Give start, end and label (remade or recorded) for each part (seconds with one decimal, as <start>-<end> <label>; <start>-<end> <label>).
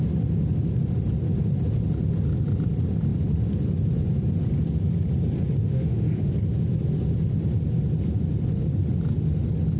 0.0-5.7 recorded; 5.7-6.3 remade; 6.3-9.8 recorded